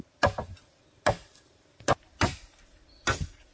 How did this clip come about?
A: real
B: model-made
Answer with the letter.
A